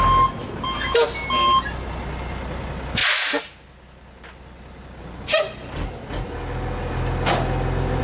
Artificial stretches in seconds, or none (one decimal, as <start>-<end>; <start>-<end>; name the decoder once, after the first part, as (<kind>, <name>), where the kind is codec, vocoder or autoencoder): none